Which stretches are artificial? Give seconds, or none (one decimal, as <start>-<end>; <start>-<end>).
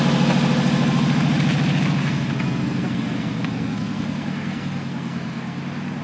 2.0-5.6